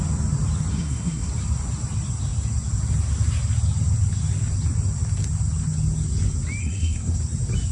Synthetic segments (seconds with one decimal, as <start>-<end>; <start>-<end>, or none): 0.7-1.3; 6.6-7.2